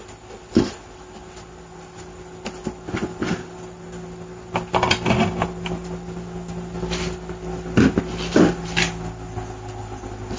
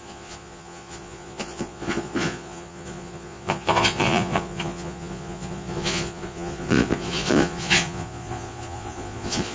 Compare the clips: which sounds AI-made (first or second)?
second